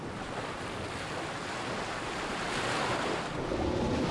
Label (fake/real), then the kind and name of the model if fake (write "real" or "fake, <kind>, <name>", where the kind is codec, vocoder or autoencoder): real